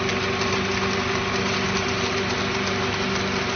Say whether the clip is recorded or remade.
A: recorded